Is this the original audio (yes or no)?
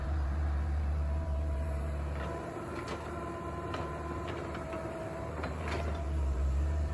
no